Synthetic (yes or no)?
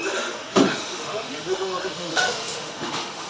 yes